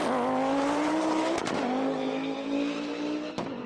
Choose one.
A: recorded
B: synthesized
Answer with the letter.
A